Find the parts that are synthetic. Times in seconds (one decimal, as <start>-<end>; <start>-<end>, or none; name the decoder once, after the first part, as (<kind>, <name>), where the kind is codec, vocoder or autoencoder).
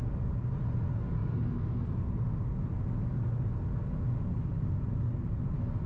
none